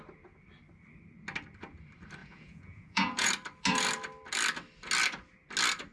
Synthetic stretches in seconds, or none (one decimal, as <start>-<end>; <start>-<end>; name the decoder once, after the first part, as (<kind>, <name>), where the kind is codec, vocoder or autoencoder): 2.2-3.3 (vocoder, Vocos)